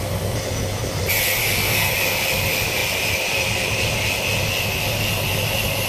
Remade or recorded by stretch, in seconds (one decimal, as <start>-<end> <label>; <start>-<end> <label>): 0.0-1.4 recorded; 1.4-1.9 remade; 1.9-5.9 recorded